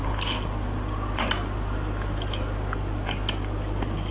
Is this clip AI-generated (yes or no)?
no